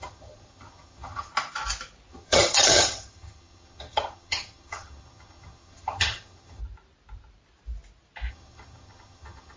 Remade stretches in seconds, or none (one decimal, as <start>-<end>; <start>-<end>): 0.0-1.3; 2.1-6.6; 8.3-9.6